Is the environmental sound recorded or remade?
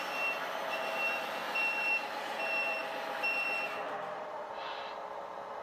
remade